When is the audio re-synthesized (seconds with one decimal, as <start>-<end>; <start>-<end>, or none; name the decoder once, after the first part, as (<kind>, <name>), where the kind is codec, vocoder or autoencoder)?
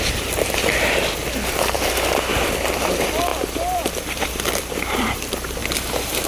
0.0-5.6 (vocoder, BigVGAN v2)